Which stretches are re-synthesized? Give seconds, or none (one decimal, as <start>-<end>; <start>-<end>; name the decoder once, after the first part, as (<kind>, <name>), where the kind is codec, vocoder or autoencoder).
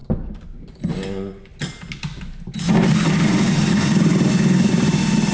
none